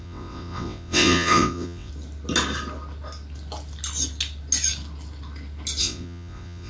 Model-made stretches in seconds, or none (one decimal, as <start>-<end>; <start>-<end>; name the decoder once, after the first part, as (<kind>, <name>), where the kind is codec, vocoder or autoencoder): 0.0-1.9 (vocoder, WaveNeXt); 5.8-6.7